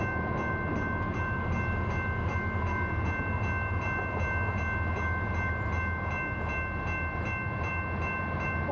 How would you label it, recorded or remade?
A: recorded